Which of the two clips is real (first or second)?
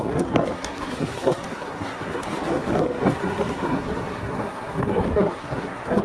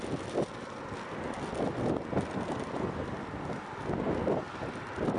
second